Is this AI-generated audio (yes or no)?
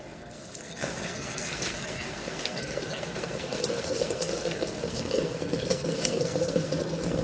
yes